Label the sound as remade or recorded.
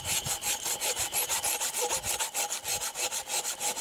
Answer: recorded